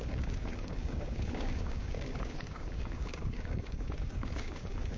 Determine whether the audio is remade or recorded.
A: remade